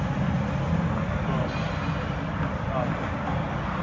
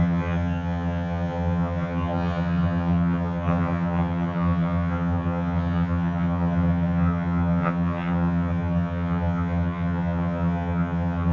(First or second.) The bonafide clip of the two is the first